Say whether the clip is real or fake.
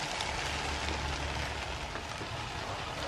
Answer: real